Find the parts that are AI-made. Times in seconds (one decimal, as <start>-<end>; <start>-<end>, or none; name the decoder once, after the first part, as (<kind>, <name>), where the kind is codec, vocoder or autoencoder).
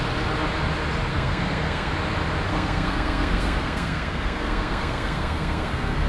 1.1-1.9 (codec, SNAC); 2.5-6.1